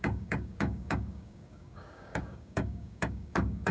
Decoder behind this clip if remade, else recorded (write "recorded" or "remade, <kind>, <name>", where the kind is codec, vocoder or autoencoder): remade, codec, DAC